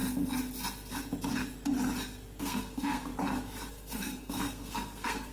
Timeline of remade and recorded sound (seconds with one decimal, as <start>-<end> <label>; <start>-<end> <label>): 0.0-2.4 recorded; 2.4-3.1 remade; 3.1-3.7 recorded; 3.7-5.3 remade